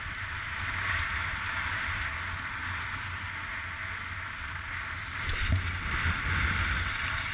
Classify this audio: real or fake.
real